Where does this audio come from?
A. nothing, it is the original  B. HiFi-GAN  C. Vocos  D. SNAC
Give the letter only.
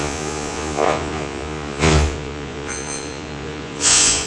C